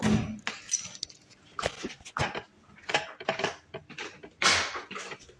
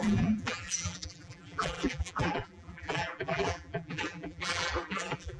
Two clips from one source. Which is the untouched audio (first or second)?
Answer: first